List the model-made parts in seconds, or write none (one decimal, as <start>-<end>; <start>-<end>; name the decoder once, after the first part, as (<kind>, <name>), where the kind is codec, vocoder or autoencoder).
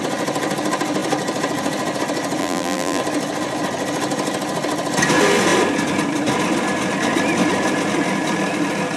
2.4-3.0 (vocoder, BigVGAN v2)